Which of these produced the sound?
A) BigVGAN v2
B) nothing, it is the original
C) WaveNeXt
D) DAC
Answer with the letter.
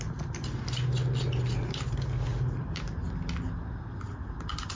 B